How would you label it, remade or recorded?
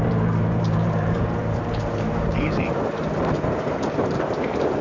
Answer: remade